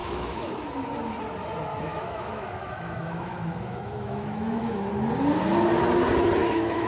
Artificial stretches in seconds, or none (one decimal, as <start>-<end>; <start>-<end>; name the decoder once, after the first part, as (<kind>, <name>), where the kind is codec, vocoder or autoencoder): 0.0-0.5 (autoencoder, DAC-VAE); 1.7-4.9; 6.4-6.9